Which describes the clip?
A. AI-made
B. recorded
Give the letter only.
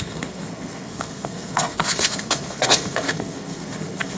A